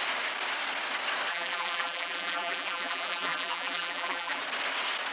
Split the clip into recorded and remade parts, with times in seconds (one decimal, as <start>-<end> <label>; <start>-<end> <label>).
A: 0.0-1.3 recorded; 1.3-4.4 remade; 4.4-5.1 recorded